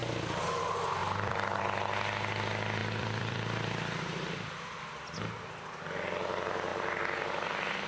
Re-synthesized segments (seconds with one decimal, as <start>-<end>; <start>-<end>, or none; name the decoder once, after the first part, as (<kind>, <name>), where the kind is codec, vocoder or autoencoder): 0.0-0.6 (vocoder, BigVGAN v2); 1.0-1.6; 2.8-5.8; 6.7-7.9